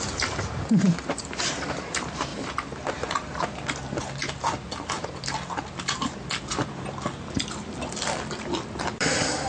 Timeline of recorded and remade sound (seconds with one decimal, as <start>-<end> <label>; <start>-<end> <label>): 0.0-2.3 remade; 2.3-2.9 recorded; 2.9-4.2 remade; 4.2-9.1 recorded; 9.1-9.5 remade